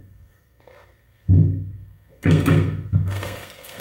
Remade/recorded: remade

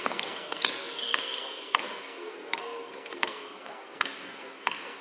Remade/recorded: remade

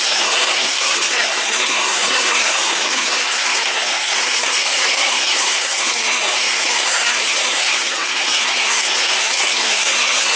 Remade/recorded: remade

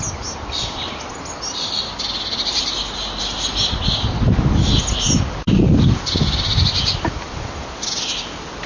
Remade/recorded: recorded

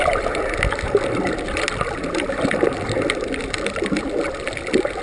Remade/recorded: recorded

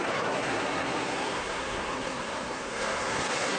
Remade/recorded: remade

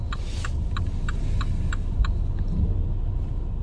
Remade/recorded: recorded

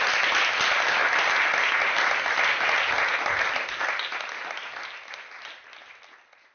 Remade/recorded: recorded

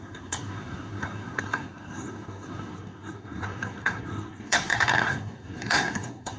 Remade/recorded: remade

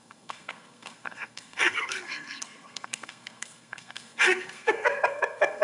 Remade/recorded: remade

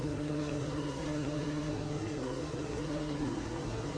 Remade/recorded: remade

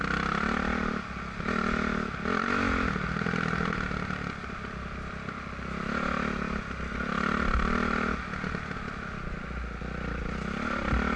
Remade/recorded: recorded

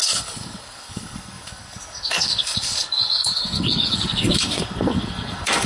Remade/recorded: remade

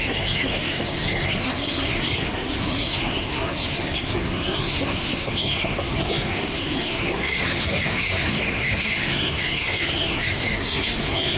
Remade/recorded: remade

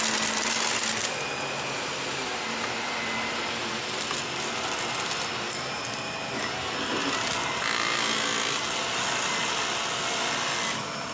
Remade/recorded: recorded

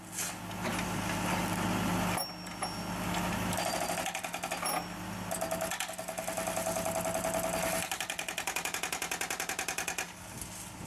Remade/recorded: recorded